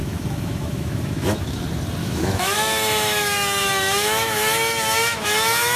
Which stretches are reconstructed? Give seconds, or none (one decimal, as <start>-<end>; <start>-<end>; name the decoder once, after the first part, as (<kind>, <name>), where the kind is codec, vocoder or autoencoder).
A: 0.0-1.6 (autoencoder, DAC-VAE); 2.0-5.8